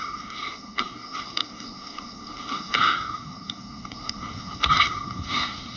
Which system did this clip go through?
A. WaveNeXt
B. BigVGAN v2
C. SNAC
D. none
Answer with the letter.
C